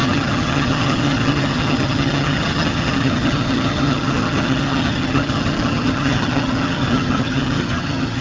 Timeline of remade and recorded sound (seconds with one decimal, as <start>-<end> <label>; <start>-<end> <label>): 0.0-8.2 remade